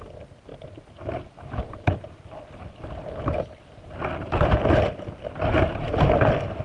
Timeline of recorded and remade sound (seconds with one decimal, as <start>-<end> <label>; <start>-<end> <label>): 0.0-6.6 recorded